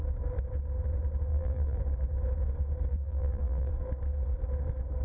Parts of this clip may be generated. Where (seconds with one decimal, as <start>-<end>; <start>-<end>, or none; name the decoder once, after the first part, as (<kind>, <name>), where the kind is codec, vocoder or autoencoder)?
1.3-1.8 (vocoder, BigVGAN v2); 2.9-3.7